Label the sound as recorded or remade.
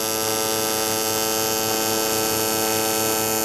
recorded